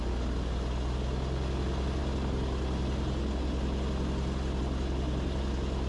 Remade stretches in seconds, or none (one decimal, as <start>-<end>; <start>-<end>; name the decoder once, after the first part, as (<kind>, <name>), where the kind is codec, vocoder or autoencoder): none